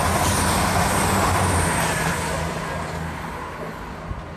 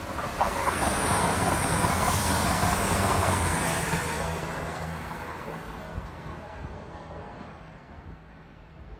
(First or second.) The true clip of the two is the first